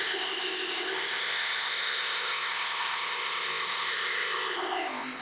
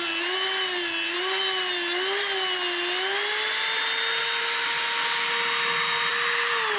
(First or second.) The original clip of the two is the second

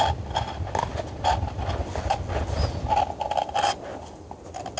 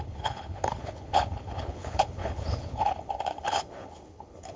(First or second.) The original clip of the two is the first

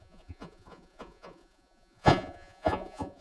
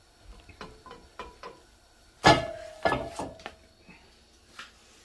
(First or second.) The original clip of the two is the second